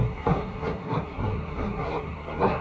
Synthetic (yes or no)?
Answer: yes